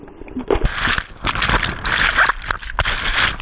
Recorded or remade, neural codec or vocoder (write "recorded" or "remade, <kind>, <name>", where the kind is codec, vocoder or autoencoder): recorded